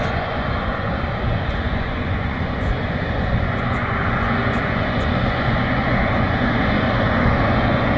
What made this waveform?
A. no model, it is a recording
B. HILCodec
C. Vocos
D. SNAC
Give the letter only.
C